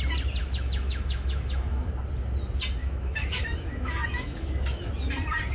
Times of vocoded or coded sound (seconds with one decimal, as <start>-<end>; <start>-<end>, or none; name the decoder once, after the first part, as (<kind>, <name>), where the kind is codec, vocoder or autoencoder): 0.4-1.9 (autoencoder, DAC-VAE); 2.8-4.9